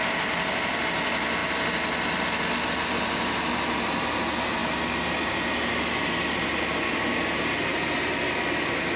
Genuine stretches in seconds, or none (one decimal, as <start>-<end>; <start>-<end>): 0.0-9.0